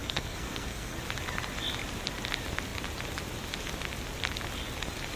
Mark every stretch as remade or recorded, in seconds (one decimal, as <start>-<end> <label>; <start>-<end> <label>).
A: 0.0-1.0 remade; 1.0-5.2 recorded